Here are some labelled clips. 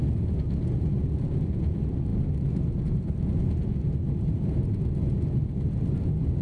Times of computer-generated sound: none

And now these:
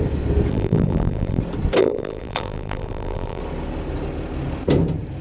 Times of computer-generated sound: 0.5-1.4 (vocoder, BigVGAN v2); 1.8-3.4

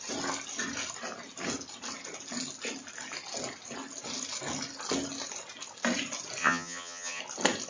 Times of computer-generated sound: 6.4-7.2 (vocoder, HiFi-GAN)

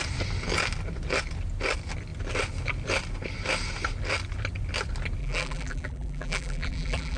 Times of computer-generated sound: 5.2-7.2 (vocoder, BigVGAN v2)

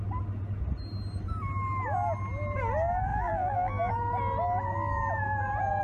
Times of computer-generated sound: 3.1-3.9 (vocoder, BigVGAN v2)

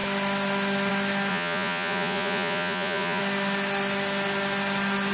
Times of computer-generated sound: 1.3-3.2 (vocoder, Vocos)

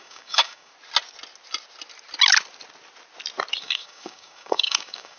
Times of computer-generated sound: 0.0-0.7 (codec, DAC); 3.6-5.2